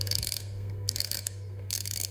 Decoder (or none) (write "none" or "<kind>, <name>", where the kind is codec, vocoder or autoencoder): codec, SNAC